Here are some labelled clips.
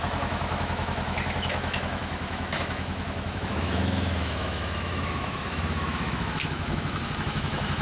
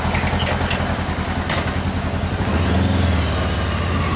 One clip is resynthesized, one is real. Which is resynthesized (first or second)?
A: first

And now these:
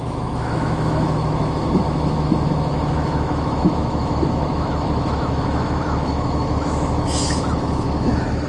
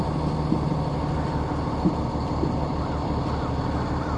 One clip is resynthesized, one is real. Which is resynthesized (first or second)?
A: first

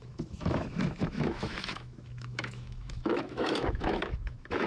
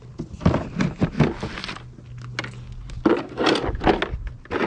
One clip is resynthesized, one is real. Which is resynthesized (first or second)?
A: first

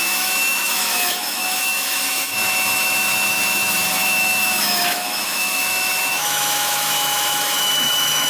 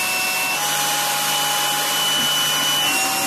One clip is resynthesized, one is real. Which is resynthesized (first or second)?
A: first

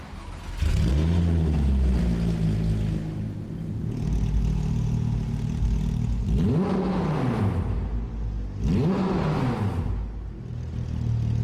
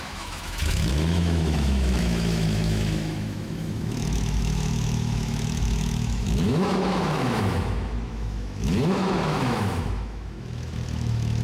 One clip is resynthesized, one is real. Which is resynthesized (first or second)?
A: second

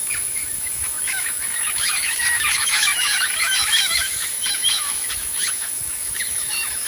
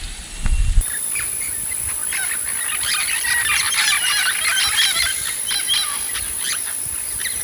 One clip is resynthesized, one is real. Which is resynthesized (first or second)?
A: first